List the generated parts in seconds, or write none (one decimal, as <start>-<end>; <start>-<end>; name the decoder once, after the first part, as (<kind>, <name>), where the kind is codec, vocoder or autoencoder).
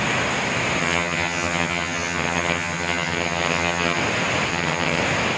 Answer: 0.8-4.0 (vocoder, HiFi-GAN); 4.5-5.0